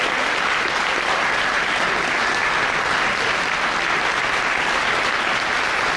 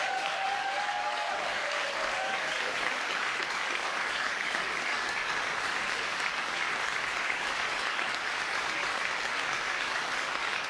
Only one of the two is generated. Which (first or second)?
second